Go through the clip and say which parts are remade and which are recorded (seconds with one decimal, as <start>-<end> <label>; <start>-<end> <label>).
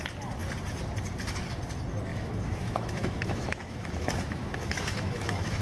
0.0-2.1 recorded; 2.1-5.6 remade